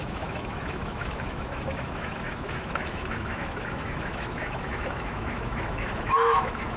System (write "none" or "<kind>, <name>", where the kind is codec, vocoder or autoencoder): autoencoder, DAC-VAE